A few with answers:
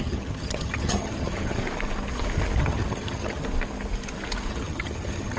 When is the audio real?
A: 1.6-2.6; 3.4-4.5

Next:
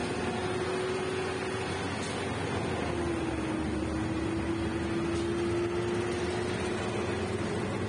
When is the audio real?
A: 0.0-7.9

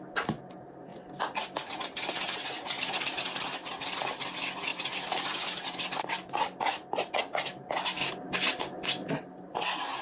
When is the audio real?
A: 0.0-10.0

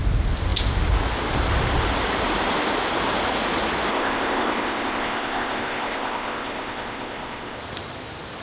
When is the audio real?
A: 0.0-3.9; 7.6-8.4

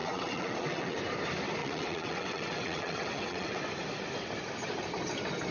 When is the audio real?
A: 1.0-1.6; 3.6-5.5